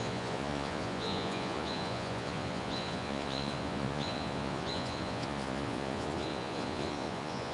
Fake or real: fake